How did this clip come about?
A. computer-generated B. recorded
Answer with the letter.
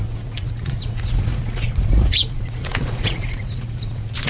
A